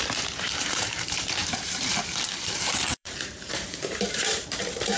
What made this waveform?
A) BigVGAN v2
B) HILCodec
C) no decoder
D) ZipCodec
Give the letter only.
A